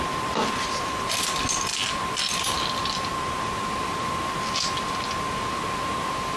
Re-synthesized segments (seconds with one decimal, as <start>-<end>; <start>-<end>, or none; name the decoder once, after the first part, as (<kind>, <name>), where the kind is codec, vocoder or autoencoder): none